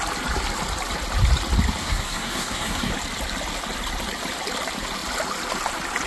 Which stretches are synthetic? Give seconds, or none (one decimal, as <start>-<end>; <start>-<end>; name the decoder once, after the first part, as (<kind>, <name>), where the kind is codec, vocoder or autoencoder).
1.8-2.9 (codec, SNAC)